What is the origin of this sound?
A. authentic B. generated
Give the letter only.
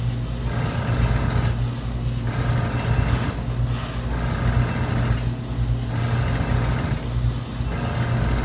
A